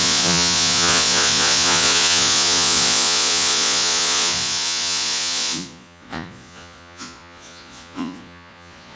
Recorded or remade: remade